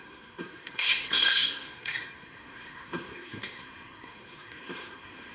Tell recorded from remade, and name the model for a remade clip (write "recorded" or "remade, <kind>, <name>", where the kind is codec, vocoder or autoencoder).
remade, codec, SNAC